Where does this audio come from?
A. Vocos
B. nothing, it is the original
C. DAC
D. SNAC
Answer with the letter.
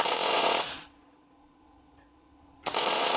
A